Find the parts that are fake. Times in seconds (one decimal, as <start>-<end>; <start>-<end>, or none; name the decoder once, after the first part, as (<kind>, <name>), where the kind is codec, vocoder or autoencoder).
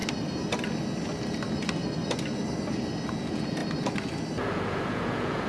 3.1-3.6 (vocoder, Vocos); 4.4-5.5